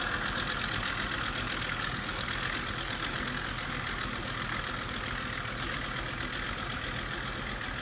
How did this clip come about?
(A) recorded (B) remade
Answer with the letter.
A